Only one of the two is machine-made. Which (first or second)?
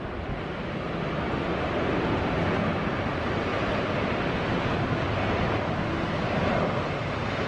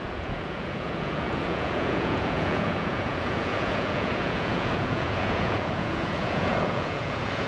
second